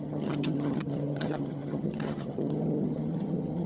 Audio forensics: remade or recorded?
remade